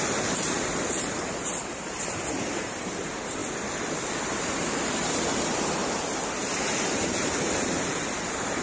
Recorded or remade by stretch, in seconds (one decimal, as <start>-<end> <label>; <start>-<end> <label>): 0.0-3.4 remade; 3.4-4.2 recorded; 4.2-5.8 remade; 5.8-6.5 recorded; 6.5-8.6 remade